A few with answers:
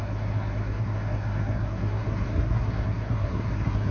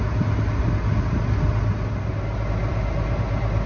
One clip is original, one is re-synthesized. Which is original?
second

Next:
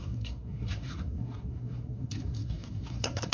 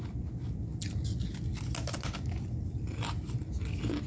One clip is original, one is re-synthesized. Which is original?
second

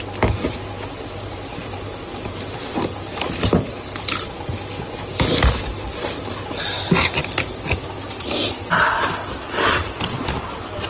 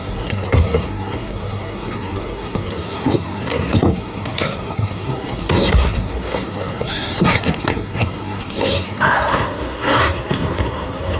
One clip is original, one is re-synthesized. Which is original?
first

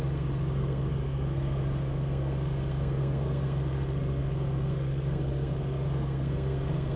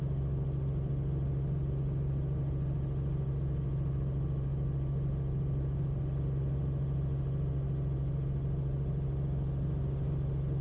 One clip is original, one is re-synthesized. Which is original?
second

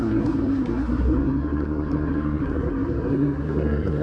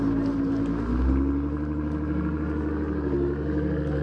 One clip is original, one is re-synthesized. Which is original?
second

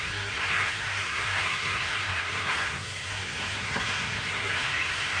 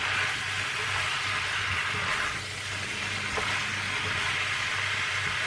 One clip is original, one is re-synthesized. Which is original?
second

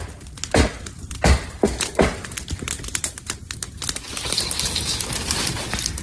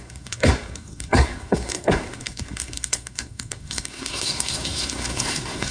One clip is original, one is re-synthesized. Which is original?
first